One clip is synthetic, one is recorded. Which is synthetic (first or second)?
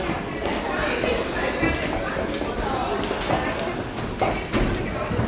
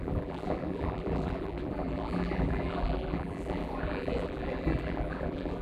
second